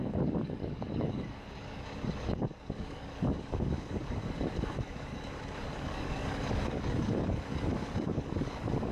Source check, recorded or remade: remade